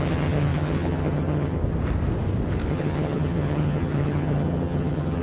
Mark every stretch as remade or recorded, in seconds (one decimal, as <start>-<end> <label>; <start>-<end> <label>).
0.0-1.6 remade; 1.6-2.7 recorded; 2.7-5.2 remade